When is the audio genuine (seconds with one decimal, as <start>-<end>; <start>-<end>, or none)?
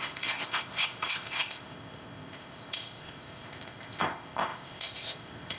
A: none